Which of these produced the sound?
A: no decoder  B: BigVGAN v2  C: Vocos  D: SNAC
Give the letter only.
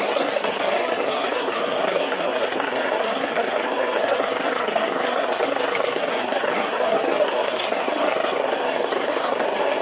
D